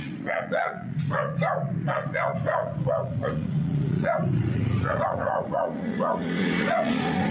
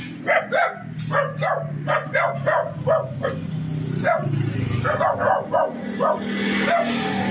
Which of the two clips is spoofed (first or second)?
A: first